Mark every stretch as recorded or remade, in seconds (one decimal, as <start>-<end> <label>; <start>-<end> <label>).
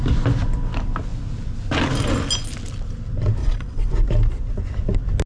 0.0-3.4 recorded; 3.4-3.9 remade; 3.9-5.3 recorded